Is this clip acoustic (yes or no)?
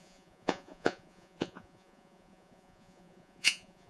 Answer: no